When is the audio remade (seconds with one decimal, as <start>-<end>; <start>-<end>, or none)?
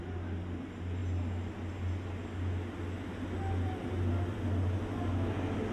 none